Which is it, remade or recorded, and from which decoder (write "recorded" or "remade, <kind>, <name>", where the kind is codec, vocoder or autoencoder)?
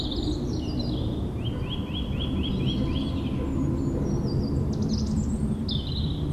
recorded